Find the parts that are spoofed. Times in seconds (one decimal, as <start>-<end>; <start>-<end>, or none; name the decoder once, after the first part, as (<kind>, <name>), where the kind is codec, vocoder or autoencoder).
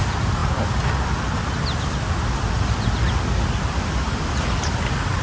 none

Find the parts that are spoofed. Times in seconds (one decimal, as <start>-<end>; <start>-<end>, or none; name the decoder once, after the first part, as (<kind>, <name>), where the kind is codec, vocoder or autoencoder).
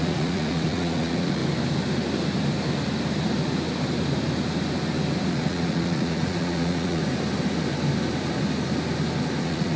0.0-1.4 (vocoder, Vocos); 5.3-7.0; 9.4-9.8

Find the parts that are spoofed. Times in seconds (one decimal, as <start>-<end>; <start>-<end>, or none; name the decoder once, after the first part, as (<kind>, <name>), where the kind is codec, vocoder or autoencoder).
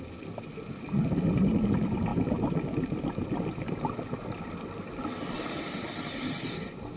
none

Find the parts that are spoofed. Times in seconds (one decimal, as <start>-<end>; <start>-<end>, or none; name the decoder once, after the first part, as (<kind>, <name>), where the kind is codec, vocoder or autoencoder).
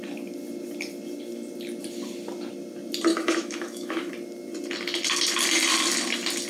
3.1-4.1 (autoencoder, DAC-VAE)